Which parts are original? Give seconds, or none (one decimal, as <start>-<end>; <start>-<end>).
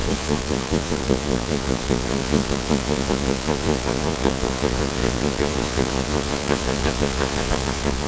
none